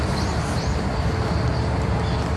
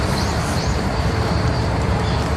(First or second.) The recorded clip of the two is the first